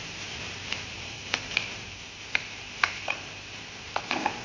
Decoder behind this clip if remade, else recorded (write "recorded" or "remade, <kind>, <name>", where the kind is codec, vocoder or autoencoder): remade, vocoder, BigVGAN v2